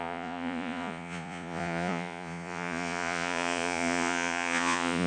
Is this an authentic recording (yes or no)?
no